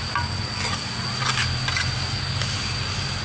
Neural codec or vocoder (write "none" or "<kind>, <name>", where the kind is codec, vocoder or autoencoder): none